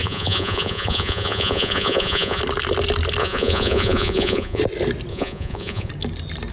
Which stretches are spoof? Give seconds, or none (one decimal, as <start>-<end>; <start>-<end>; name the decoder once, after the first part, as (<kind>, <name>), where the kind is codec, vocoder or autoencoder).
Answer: 0.0-2.4 (vocoder, Vocos); 3.2-4.6; 5.1-5.9